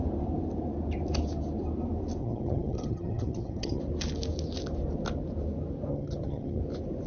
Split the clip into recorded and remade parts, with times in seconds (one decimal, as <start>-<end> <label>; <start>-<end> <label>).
0.0-2.2 recorded; 2.2-3.8 remade; 3.8-5.9 recorded; 5.9-6.6 remade; 6.6-7.1 recorded